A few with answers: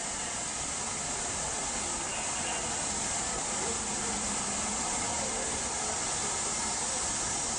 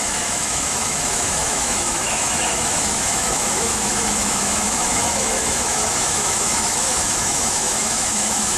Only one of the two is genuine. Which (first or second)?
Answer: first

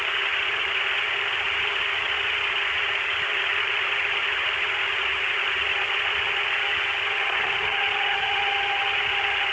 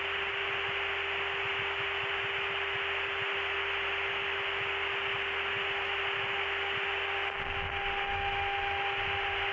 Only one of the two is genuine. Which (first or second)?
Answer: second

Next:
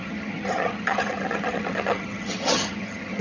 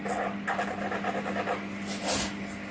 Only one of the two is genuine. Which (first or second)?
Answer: second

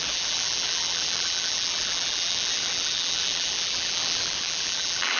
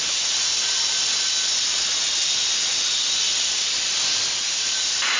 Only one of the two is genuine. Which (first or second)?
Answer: second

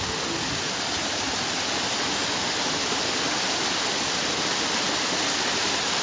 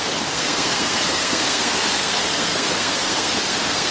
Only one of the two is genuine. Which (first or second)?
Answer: first